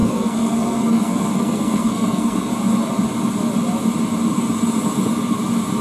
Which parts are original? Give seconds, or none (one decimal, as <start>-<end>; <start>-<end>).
2.5-5.8